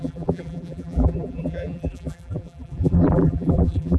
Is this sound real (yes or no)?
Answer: no